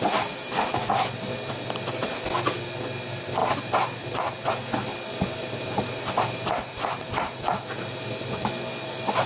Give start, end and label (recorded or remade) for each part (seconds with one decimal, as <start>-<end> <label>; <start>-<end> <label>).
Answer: 0.0-3.4 recorded; 3.4-4.5 remade; 4.5-5.4 recorded; 5.4-7.1 remade; 7.1-9.3 recorded